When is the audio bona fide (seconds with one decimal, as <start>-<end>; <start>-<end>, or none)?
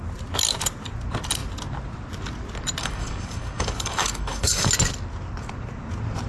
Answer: 0.0-2.8; 4.7-6.3